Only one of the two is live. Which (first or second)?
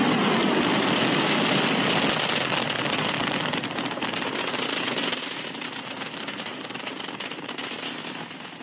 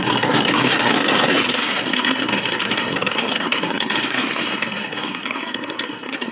first